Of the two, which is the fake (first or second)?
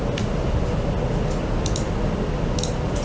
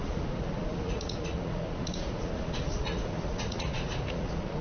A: second